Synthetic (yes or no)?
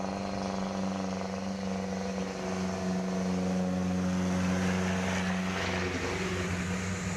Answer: no